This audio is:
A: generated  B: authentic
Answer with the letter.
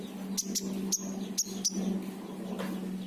B